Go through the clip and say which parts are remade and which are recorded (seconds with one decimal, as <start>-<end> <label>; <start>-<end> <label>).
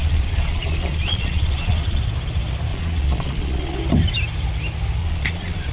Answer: 0.0-2.0 remade; 2.0-2.7 recorded; 2.7-3.8 remade; 3.8-5.0 recorded; 5.0-5.7 remade